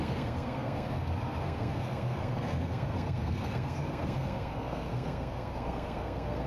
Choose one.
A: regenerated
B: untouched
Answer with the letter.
A